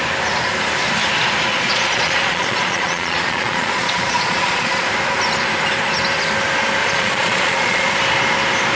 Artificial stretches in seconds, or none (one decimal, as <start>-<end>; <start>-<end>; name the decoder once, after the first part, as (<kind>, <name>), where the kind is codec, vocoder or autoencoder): 1.5-4.9 (vocoder, Vocos); 6.8-7.9